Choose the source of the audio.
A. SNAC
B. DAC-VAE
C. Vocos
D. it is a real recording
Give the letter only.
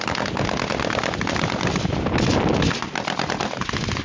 D